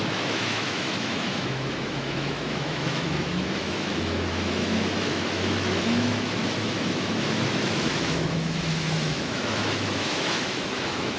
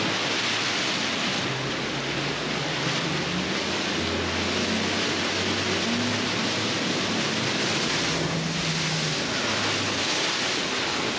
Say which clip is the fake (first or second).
first